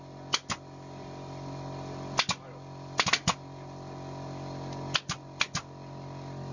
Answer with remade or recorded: recorded